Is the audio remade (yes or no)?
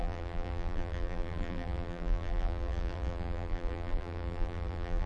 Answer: yes